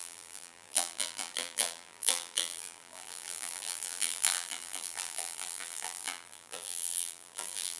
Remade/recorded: remade